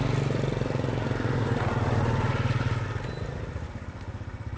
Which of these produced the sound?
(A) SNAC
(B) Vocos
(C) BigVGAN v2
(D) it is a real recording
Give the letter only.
D